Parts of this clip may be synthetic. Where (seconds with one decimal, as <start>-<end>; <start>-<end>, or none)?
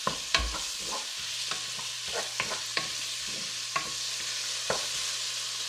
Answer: 2.7-3.3